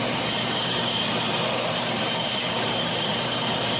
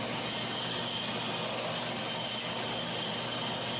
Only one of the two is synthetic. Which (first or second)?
first